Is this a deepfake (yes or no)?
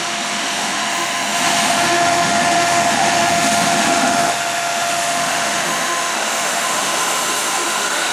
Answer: yes